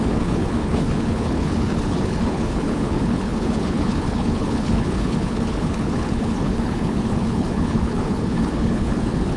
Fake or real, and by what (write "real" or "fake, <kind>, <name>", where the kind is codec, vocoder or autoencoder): fake, codec, HILCodec